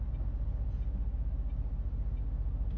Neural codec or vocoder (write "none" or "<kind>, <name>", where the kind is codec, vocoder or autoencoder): none